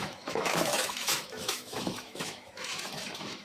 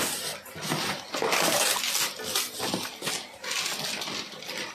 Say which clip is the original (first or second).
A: second